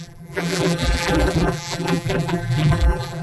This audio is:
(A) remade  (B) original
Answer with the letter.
A